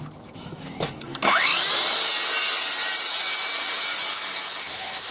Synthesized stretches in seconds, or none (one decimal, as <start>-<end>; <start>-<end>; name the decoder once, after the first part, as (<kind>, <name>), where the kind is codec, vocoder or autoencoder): 0.0-1.5 (autoencoder, DAC-VAE); 4.6-5.1